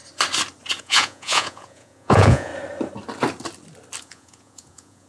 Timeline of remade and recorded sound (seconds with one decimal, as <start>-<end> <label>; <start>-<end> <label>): 0.0-0.8 recorded; 0.8-2.5 remade; 2.5-4.0 recorded; 4.0-5.1 remade